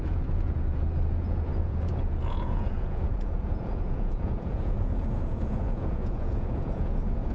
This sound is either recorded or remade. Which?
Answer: remade